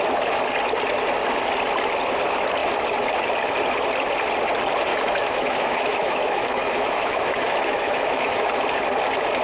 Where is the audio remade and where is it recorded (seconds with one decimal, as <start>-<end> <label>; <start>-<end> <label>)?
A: 0.0-4.9 recorded; 4.9-8.5 remade; 8.5-9.4 recorded